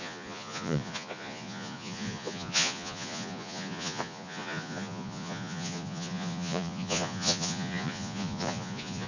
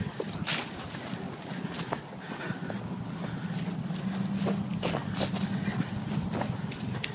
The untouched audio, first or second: second